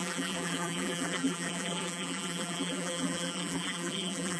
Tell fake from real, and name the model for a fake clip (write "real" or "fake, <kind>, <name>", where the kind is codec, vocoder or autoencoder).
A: fake, vocoder, BigVGAN v2